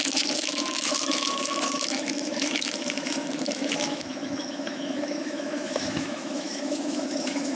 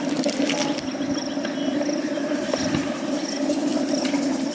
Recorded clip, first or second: second